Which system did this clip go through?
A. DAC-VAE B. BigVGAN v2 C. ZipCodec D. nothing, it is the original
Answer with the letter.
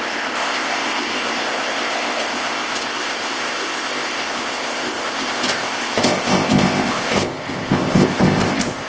C